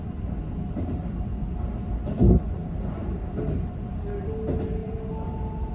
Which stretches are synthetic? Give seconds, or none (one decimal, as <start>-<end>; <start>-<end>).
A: 2.6-3.4; 4.8-5.7